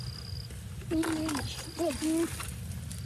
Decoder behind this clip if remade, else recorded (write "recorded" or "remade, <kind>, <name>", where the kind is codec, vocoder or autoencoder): recorded